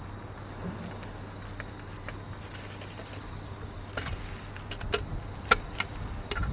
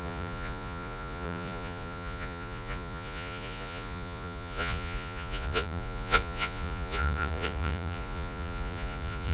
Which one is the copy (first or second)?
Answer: second